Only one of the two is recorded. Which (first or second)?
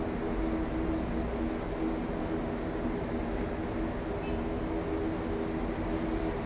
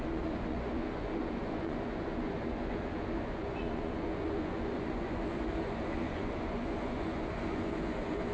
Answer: first